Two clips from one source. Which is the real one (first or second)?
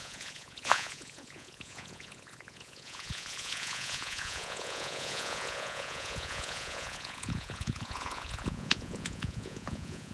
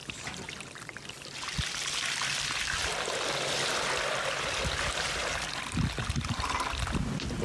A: second